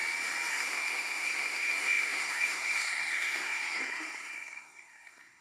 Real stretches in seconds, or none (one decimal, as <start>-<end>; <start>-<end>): 0.0-0.5